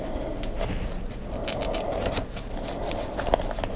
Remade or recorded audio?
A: recorded